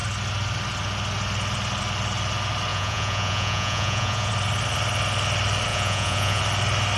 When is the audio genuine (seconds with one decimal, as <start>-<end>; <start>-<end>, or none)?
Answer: 0.0-2.7; 4.3-5.7; 6.4-7.0